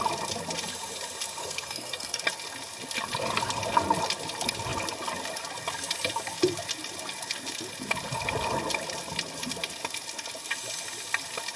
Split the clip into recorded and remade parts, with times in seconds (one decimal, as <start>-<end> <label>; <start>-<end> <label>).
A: 0.0-1.4 recorded; 1.4-2.2 remade; 2.2-11.6 recorded